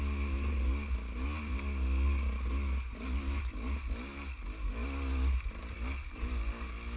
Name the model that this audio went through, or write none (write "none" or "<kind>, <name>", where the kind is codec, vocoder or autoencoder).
none